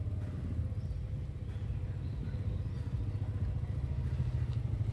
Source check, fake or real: real